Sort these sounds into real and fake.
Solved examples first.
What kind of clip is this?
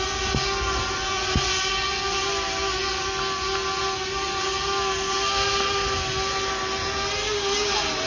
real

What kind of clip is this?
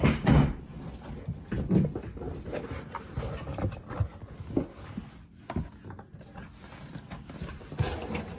real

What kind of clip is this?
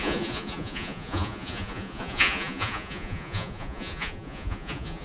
fake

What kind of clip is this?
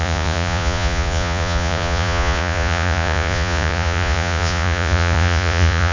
fake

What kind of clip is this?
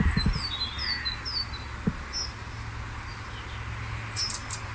real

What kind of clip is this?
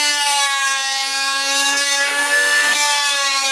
fake